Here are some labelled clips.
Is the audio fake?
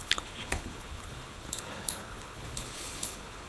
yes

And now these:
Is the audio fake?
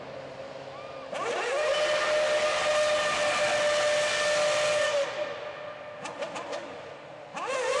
no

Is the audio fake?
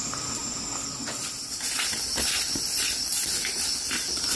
no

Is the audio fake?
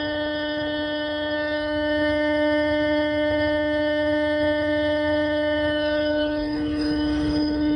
yes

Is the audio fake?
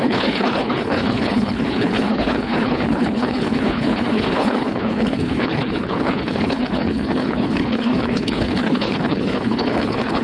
yes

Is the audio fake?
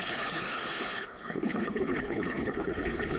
yes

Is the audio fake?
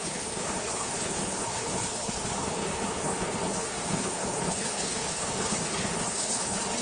yes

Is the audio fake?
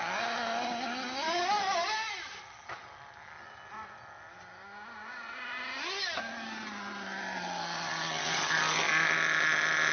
no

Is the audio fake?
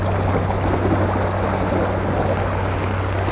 no